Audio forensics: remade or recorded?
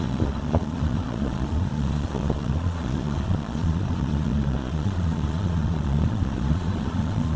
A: remade